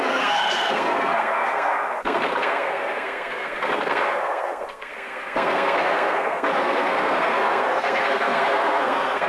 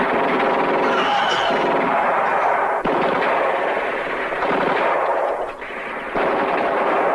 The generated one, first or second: first